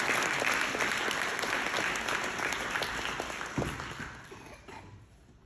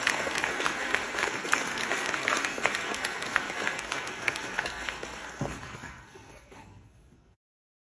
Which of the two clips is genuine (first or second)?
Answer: first